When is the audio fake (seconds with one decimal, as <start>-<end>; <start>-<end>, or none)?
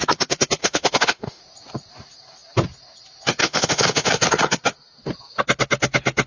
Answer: 0.6-1.4; 3.4-4.1